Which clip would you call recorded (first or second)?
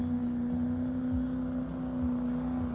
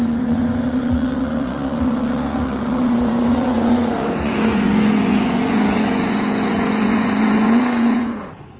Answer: first